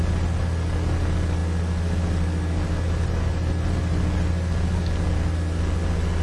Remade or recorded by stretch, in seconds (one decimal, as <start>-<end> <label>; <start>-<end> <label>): 0.0-6.2 recorded